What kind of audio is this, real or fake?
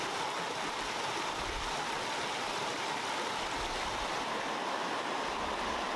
real